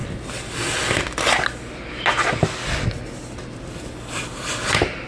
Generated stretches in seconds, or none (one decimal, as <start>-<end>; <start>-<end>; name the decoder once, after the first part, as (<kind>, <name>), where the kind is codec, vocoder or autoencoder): none